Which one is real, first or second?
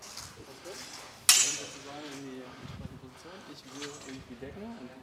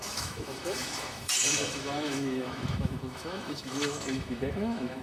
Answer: first